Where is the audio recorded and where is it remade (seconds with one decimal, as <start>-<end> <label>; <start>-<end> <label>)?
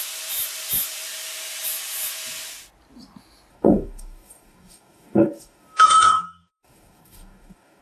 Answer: 0.0-3.5 recorded; 3.5-7.8 remade